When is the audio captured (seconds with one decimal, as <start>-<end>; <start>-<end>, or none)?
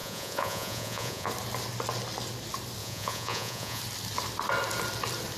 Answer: 1.3-2.8; 3.8-5.4